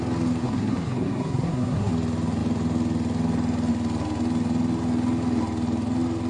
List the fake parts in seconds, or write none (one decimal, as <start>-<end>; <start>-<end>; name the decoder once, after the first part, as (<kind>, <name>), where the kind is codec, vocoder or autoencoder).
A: 0.4-1.9 (codec, SNAC)